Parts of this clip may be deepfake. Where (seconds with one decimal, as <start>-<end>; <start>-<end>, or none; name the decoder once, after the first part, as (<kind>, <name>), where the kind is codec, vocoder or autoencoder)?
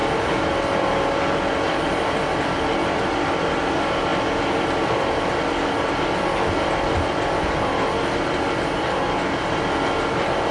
none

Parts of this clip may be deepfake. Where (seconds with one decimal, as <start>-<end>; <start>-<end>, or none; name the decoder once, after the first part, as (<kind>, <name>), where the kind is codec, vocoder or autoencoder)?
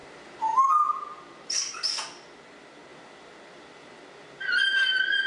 0.0-0.6 (vocoder, BigVGAN v2); 1.1-1.7; 2.9-4.6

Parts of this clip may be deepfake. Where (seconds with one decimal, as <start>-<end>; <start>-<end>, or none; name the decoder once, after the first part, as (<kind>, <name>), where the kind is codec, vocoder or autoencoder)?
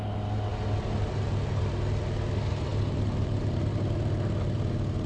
none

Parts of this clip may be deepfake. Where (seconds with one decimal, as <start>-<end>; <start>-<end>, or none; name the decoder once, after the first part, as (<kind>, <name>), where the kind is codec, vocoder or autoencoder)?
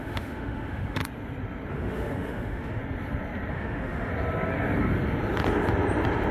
0.0-1.0 (autoencoder, DAC-VAE); 1.7-2.8; 3.5-4.1